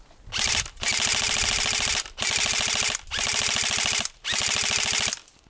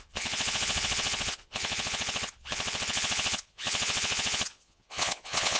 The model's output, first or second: second